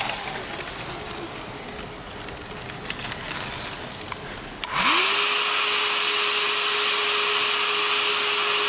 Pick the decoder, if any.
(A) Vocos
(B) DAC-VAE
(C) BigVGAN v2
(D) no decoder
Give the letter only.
D